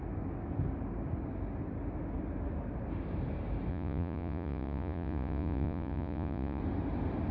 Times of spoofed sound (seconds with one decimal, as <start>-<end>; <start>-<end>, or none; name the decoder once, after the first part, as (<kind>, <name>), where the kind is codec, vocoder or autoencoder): 3.7-6.6 (vocoder, Vocos)